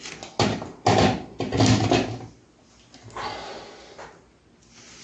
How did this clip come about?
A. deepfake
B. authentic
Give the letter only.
B